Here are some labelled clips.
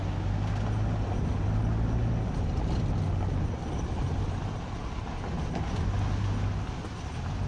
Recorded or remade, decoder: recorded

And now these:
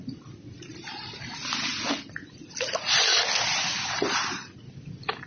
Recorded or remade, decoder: recorded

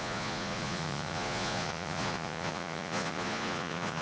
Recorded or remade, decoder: remade, vocoder, Vocos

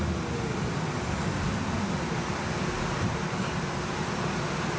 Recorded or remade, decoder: remade, vocoder, BigVGAN v2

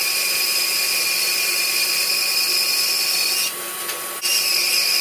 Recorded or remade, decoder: recorded